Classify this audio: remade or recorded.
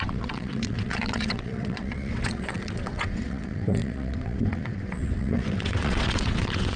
remade